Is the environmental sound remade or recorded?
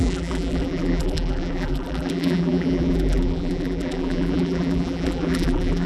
remade